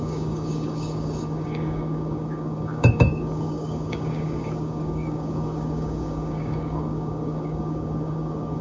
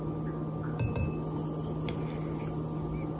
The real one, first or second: second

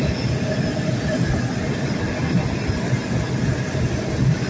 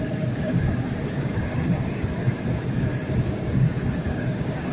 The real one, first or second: first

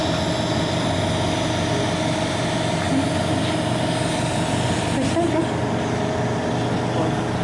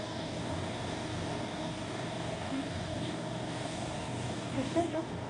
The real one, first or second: first